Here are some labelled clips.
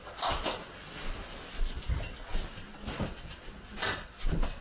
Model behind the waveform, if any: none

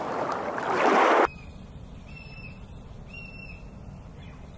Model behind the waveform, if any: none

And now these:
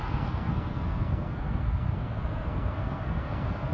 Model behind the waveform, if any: codec, SNAC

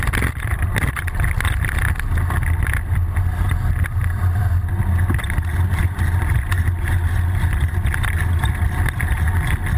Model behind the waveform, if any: none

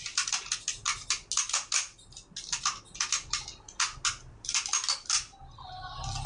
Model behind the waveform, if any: none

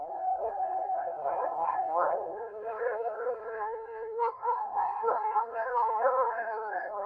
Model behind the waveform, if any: codec, SNAC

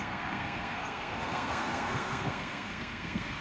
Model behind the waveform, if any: codec, SNAC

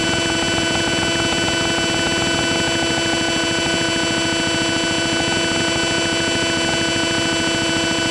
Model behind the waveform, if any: none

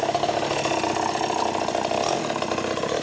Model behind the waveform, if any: none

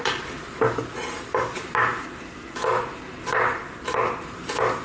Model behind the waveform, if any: none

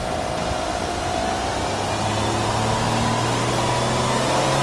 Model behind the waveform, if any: none